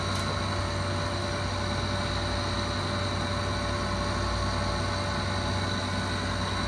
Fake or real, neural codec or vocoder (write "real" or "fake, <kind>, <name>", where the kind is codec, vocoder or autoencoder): real